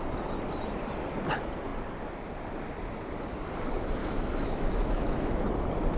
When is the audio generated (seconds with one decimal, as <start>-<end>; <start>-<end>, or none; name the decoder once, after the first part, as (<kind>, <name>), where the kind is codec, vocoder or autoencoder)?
4.0-5.4 (autoencoder, DAC-VAE)